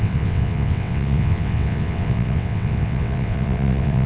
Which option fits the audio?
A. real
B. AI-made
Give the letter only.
B